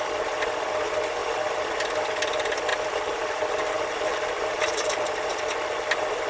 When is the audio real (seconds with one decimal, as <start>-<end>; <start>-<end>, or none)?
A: 0.0-2.7; 5.3-6.3